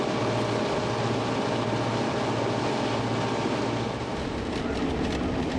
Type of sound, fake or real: real